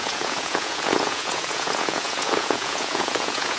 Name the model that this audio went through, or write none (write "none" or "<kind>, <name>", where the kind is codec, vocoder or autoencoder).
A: vocoder, Vocos